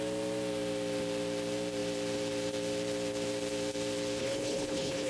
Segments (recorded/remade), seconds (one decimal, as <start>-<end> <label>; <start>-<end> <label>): 0.0-4.2 recorded; 4.2-5.1 remade